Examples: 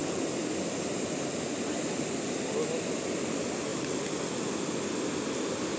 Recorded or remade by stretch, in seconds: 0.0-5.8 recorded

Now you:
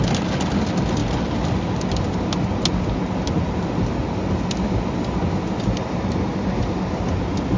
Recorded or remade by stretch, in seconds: 0.0-7.6 recorded

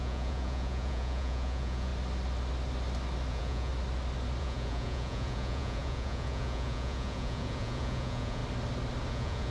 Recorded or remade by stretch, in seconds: 0.0-1.9 remade; 1.9-3.3 recorded; 3.3-3.7 remade; 3.7-4.4 recorded; 4.4-8.4 remade; 8.4-9.1 recorded; 9.1-9.5 remade

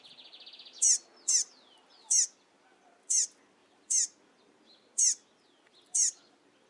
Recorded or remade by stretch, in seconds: 0.0-6.7 recorded

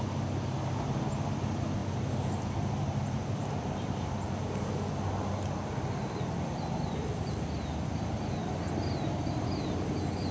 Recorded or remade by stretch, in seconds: 0.0-10.3 recorded